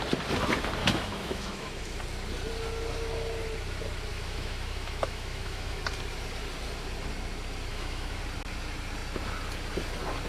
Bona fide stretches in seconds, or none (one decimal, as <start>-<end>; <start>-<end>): 0.0-0.8; 2.0-4.1; 5.8-7.7; 8.2-10.3